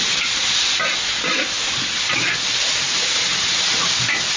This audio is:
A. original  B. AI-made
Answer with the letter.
A